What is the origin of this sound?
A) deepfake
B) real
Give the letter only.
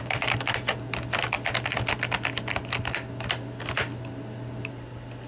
B